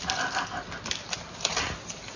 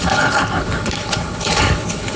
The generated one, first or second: second